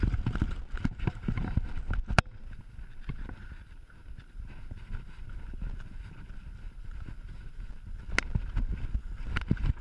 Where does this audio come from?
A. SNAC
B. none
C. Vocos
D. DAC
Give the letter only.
B